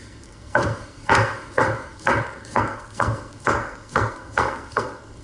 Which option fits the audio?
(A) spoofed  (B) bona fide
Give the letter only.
A